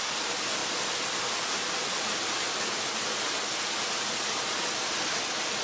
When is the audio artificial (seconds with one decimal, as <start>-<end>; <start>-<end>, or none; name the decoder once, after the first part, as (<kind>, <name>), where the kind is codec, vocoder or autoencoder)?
none